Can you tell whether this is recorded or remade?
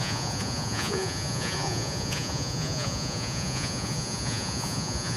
remade